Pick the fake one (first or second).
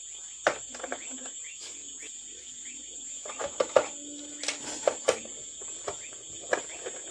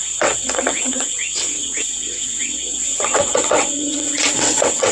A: second